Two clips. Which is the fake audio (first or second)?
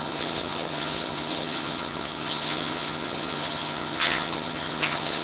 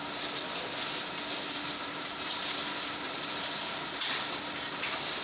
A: first